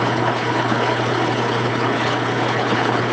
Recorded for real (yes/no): no